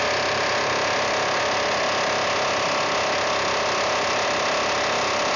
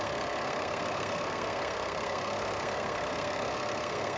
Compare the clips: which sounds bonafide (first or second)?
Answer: first